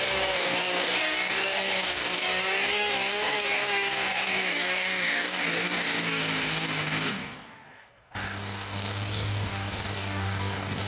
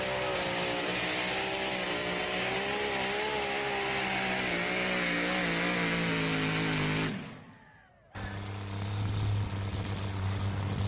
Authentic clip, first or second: second